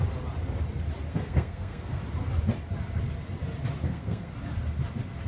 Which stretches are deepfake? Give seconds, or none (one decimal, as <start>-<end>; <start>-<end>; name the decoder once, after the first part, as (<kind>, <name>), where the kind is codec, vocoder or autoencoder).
1.1-2.0 (codec, SNAC); 3.8-4.3